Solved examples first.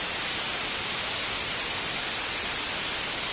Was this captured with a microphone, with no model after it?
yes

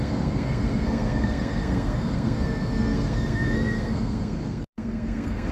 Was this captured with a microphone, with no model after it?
no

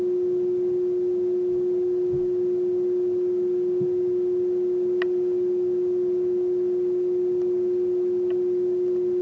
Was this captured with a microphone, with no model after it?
yes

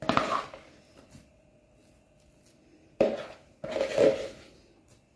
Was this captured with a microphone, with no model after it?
yes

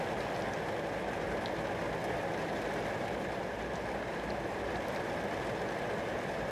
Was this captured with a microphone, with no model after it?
yes